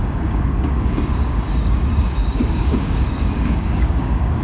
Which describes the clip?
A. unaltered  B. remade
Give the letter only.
B